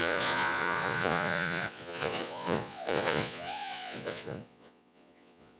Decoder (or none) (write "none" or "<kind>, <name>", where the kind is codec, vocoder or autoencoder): vocoder, Vocos